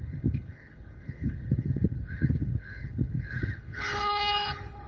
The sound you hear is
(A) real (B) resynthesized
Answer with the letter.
B